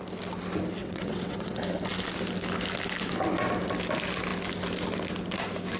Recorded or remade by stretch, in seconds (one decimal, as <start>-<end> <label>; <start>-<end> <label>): 0.0-0.8 recorded; 0.8-1.6 remade; 1.6-5.8 recorded